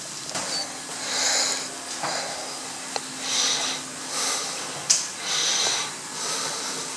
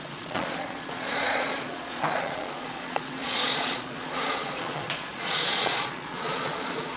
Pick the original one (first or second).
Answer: first